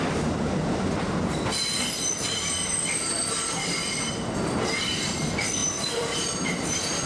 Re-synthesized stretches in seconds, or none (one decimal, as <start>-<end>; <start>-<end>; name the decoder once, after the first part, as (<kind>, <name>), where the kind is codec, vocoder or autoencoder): 5.6-7.1 (vocoder, BigVGAN v2)